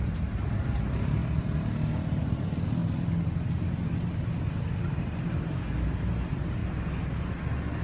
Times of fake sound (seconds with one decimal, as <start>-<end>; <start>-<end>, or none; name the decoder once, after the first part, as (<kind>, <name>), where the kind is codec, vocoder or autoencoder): 0.0-1.2 (vocoder, BigVGAN v2); 2.2-2.8; 4.9-6.6